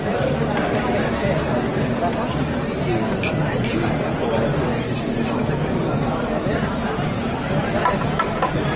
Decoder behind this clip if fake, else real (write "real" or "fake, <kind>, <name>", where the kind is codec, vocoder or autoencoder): real